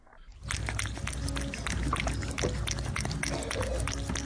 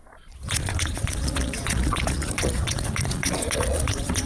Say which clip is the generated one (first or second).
second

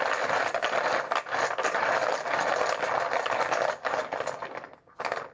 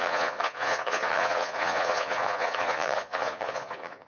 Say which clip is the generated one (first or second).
second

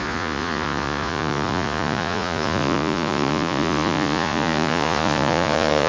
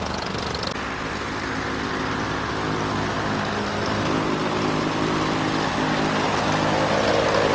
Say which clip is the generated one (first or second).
first